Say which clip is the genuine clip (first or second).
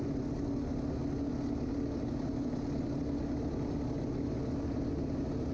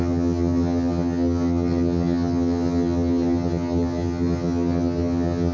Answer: first